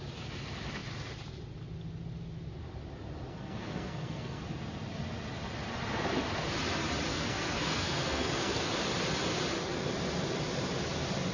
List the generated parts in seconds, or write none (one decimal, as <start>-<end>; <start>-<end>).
3.3-4.4; 7.1-8.7